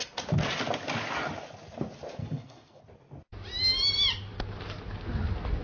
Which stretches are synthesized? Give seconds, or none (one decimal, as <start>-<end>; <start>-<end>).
2.2-2.8